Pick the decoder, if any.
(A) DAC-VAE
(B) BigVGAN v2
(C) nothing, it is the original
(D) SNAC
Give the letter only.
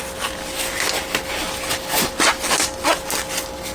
C